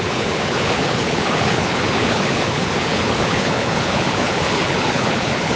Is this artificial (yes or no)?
yes